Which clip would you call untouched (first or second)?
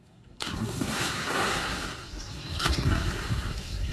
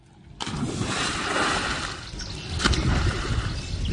second